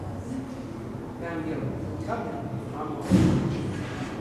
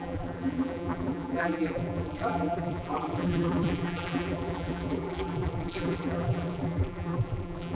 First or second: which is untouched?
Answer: first